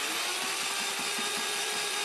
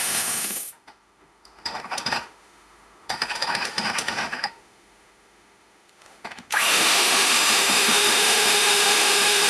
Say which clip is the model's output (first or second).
second